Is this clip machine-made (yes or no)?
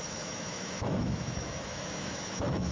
yes